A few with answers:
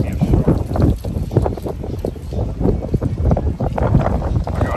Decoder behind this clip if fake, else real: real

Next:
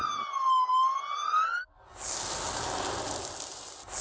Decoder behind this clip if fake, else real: real